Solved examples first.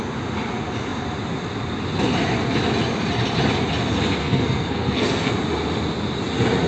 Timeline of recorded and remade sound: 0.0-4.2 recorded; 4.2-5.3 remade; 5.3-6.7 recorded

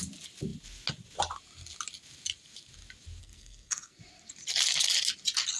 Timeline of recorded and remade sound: 0.0-3.2 recorded; 3.2-4.0 remade; 4.0-5.6 recorded